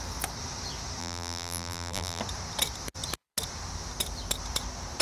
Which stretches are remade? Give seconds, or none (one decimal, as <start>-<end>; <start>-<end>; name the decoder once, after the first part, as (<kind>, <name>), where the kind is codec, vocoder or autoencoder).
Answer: 1.0-2.2 (vocoder, BigVGAN v2)